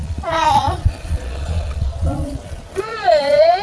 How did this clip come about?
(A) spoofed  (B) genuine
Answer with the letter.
A